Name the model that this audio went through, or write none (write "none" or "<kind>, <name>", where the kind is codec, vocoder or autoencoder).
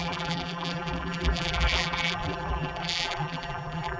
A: vocoder, BigVGAN v2